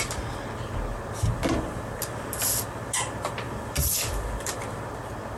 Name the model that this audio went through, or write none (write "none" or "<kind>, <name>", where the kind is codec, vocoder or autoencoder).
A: none